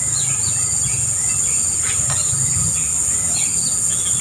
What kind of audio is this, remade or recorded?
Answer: recorded